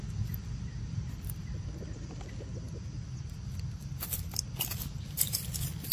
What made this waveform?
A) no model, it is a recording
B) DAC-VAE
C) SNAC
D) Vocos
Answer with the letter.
A